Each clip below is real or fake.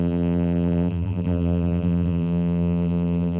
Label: fake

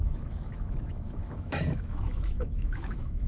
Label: fake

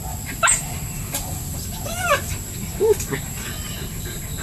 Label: real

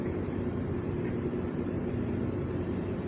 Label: fake